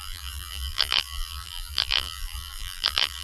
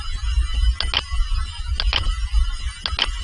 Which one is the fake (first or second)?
first